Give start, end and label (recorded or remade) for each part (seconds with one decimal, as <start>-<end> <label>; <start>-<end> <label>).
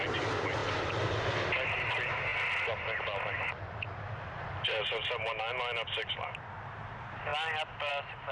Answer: 0.0-8.3 recorded